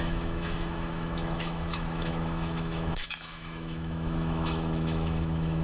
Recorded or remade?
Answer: remade